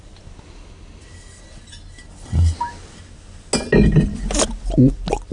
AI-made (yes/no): no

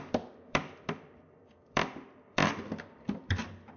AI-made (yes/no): yes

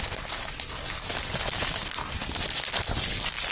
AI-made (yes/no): no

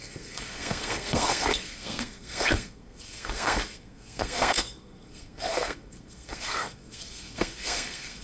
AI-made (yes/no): yes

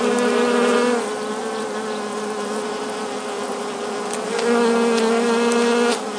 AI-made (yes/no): no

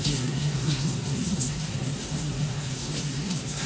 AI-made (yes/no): yes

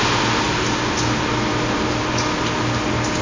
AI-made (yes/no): no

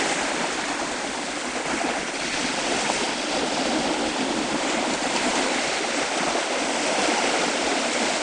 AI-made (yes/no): no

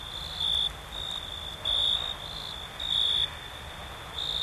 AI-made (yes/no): no